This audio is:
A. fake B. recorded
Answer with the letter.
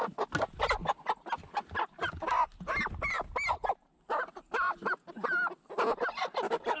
B